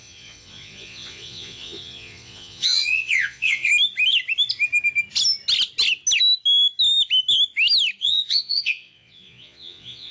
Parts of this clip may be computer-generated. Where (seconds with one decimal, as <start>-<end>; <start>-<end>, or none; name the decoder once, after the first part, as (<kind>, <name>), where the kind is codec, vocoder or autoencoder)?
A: 0.0-3.7 (vocoder, Vocos); 8.0-10.1